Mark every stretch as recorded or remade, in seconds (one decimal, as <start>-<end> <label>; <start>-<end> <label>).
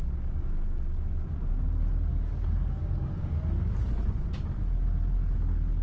0.0-2.1 recorded; 2.1-4.0 remade; 4.0-5.8 recorded